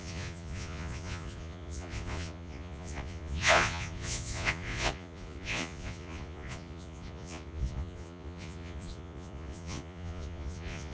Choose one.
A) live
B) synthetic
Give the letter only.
B